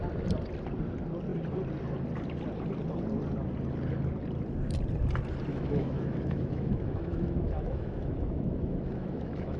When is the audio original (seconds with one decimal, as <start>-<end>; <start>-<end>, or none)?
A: 0.0-5.5